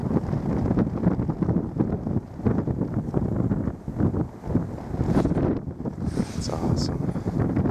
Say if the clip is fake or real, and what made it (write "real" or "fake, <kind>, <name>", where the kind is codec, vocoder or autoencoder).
real